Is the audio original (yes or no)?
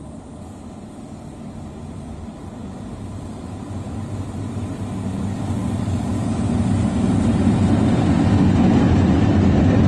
yes